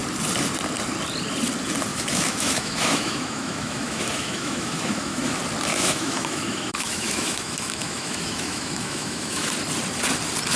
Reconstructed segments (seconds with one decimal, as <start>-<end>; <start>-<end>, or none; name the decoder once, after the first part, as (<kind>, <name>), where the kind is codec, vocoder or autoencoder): 1.9-5.2 (autoencoder, DAC-VAE); 5.7-9.5